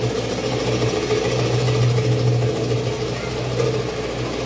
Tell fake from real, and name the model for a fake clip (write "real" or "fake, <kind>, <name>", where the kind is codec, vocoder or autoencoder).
real